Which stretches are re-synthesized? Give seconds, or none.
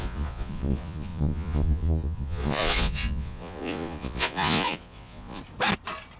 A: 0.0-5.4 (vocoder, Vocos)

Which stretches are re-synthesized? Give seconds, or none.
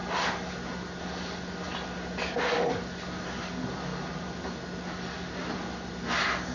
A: none